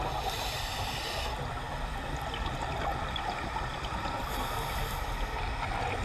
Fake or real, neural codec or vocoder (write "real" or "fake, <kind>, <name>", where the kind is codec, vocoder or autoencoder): real